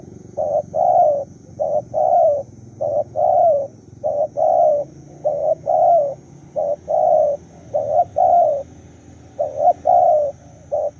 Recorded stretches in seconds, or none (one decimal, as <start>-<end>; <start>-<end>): 0.0-3.3; 4.3-11.0

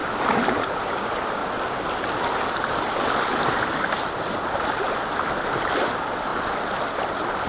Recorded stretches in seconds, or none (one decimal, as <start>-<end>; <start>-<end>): 1.4-3.5

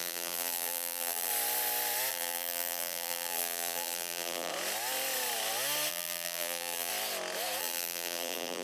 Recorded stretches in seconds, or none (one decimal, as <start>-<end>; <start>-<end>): 1.3-2.1; 4.5-5.9; 6.9-7.6